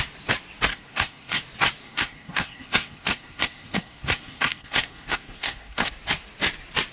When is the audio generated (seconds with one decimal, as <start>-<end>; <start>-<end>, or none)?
0.7-1.4; 1.8-5.9